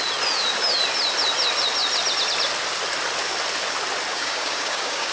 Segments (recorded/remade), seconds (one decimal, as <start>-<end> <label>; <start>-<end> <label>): 0.0-4.1 recorded; 4.1-5.1 remade

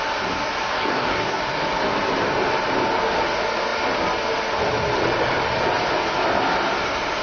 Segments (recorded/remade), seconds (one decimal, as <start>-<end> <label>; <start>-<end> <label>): 0.0-0.7 recorded; 0.7-1.4 remade; 1.4-7.2 recorded

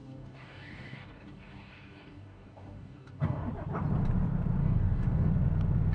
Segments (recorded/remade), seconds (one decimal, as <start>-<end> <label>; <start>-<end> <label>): 0.0-3.5 remade; 3.5-4.6 recorded; 4.6-5.3 remade; 5.3-5.9 recorded

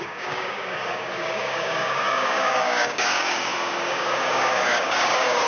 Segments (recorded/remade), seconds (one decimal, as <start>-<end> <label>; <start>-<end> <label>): 0.0-5.5 remade

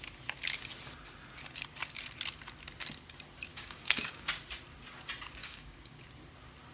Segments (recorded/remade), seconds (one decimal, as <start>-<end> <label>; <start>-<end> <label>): 0.0-3.5 recorded; 3.5-4.3 remade; 4.3-5.4 recorded; 5.4-6.0 remade; 6.0-6.7 recorded

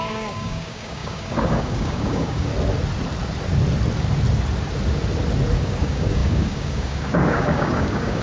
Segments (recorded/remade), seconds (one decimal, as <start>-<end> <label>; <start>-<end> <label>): 0.0-2.5 remade; 2.5-5.6 recorded; 5.6-8.2 remade